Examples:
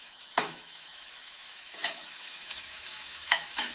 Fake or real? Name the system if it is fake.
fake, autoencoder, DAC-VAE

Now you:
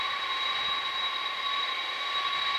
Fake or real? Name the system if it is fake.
real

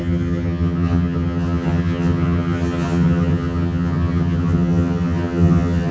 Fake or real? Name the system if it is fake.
fake, vocoder, HiFi-GAN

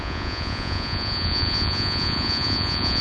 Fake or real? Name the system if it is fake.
fake, vocoder, Vocos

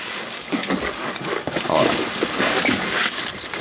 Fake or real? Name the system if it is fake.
fake, codec, DAC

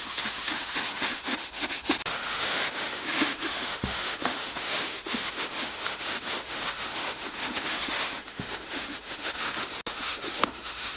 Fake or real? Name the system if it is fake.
fake, autoencoder, DAC-VAE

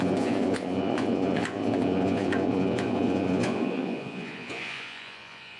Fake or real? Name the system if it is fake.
fake, vocoder, Vocos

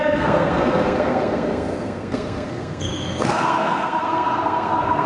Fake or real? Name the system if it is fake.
fake, codec, SNAC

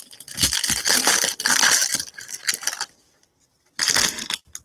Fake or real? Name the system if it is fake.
real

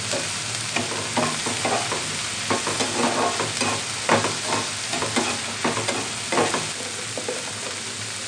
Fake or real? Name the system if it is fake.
real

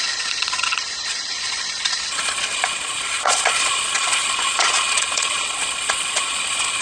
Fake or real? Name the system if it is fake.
fake, vocoder, Vocos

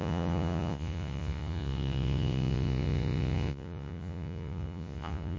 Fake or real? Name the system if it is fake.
fake, vocoder, Vocos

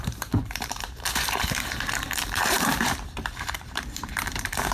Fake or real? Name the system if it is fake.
fake, vocoder, BigVGAN v2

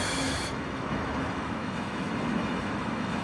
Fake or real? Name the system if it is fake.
fake, autoencoder, DAC-VAE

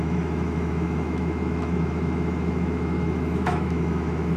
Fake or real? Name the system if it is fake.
fake, autoencoder, DAC-VAE